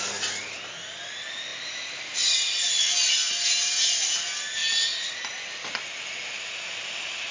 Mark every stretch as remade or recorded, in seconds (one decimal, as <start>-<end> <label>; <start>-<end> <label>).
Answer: 0.0-7.3 recorded

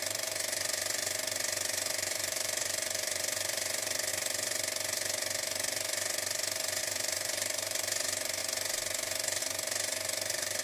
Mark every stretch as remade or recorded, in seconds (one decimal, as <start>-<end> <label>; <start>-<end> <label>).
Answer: 0.0-1.0 remade; 1.0-2.1 recorded; 2.1-4.1 remade; 4.1-6.8 recorded; 6.8-8.4 remade; 8.4-9.4 recorded; 9.4-10.6 remade

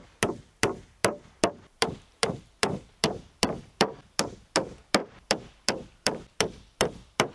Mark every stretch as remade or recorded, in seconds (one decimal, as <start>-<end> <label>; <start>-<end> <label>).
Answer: 0.0-7.3 remade

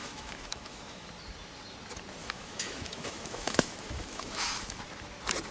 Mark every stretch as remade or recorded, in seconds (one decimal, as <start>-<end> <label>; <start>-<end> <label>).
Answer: 0.0-1.1 remade; 1.1-2.2 recorded; 2.2-4.8 remade; 4.8-5.5 recorded

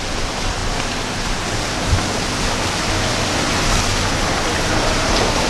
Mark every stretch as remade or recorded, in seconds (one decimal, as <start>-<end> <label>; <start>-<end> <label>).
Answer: 0.0-5.5 recorded